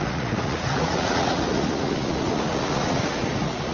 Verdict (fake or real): fake